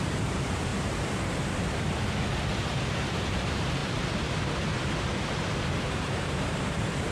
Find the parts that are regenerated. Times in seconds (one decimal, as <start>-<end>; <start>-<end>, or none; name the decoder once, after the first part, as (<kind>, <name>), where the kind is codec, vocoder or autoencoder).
0.0-0.7 (vocoder, BigVGAN v2); 3.3-3.8; 5.8-7.1